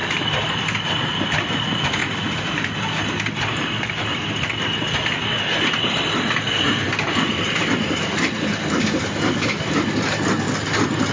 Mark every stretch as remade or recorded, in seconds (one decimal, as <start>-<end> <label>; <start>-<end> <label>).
0.0-11.1 recorded